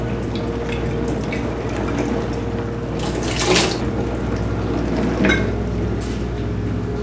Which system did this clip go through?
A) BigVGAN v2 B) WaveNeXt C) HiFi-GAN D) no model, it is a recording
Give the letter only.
D